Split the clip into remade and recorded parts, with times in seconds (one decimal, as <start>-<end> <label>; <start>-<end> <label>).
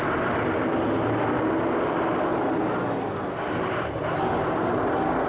0.0-5.3 recorded